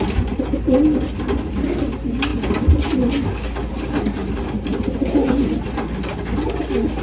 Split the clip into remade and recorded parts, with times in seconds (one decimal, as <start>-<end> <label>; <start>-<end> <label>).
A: 0.0-7.0 recorded